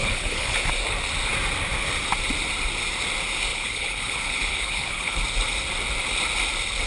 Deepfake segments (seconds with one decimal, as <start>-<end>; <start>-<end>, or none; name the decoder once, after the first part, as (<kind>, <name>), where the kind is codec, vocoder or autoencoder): 0.0-0.5 (codec, HILCodec); 3.5-5.2